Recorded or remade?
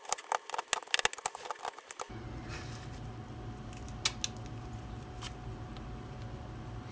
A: recorded